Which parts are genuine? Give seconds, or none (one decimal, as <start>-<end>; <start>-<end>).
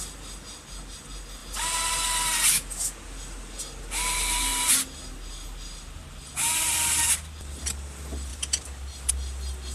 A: 0.0-8.3; 9.1-9.7